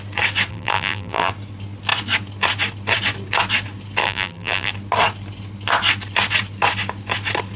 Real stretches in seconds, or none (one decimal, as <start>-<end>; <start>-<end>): 0.0-0.5; 1.3-4.0; 4.7-7.6